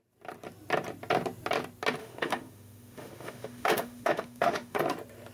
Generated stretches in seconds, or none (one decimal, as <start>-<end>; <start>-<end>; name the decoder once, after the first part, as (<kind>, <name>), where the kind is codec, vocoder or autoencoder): 2.0-4.8 (autoencoder, DAC-VAE)